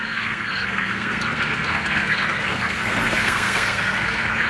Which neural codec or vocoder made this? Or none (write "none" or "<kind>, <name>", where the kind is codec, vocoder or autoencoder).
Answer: codec, SNAC